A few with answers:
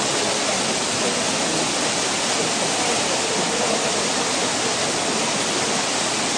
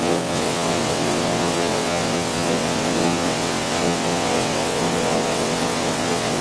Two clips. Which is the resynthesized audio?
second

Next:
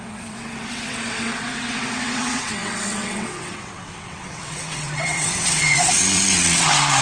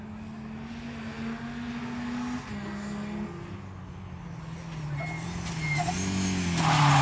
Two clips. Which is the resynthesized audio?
first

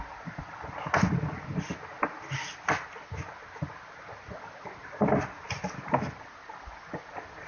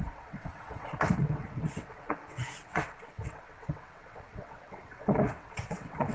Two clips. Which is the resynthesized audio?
second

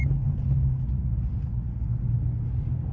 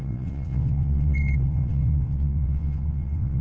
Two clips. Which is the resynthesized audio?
second